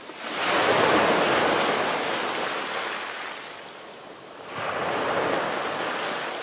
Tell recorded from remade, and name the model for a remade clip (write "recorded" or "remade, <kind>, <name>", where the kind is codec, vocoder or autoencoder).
recorded